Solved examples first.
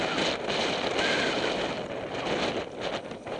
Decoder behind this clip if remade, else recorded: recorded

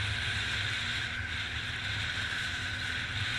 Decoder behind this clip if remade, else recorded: recorded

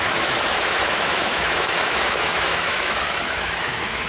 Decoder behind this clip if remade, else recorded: remade, autoencoder, DAC-VAE